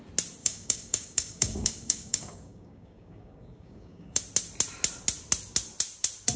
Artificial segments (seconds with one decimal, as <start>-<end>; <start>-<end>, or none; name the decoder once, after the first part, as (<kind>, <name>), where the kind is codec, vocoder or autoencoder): 0.4-4.2 (codec, DAC)